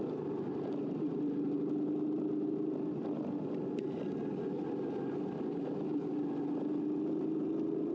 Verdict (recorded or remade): recorded